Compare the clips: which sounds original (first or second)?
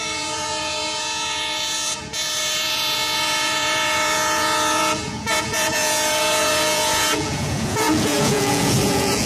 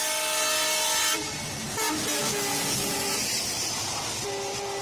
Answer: second